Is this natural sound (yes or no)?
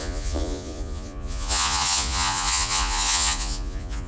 no